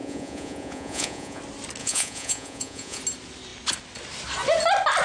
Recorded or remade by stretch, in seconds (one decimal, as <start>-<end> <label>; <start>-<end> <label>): 0.0-1.4 remade; 1.4-1.8 recorded; 1.8-3.0 remade; 3.0-5.0 recorded